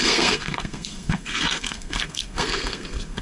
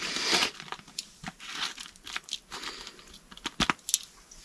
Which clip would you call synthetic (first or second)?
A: first